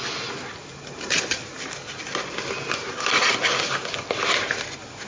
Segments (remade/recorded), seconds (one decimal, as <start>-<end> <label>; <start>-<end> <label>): 0.0-5.1 recorded